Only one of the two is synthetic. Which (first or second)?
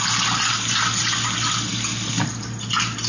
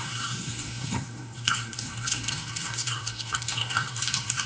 second